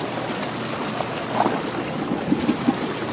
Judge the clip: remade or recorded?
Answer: recorded